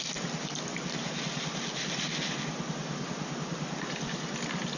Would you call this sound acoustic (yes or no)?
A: yes